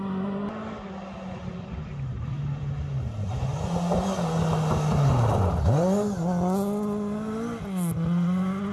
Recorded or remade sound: recorded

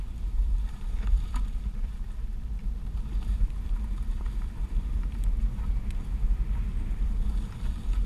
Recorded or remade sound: remade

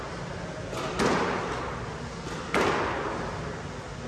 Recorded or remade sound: recorded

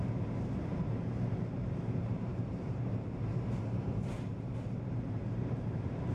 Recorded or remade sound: remade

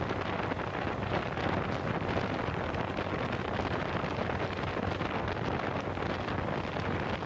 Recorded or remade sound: recorded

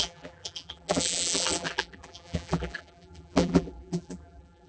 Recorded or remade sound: remade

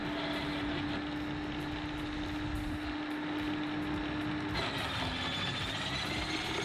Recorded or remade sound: recorded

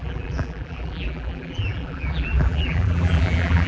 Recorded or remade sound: remade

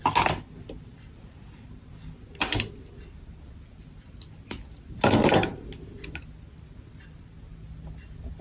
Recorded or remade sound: recorded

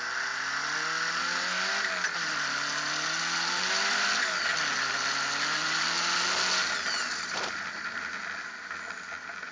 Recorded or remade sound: recorded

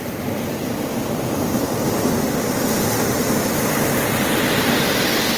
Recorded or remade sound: recorded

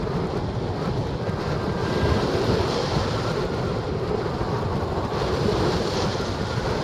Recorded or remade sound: recorded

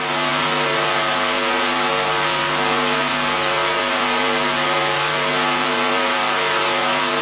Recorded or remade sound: remade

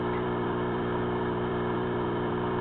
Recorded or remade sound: remade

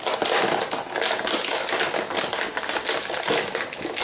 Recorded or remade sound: recorded